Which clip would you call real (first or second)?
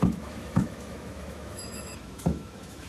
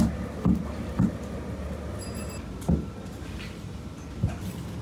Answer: second